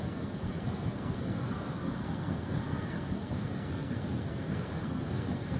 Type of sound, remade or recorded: remade